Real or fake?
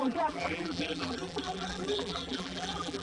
fake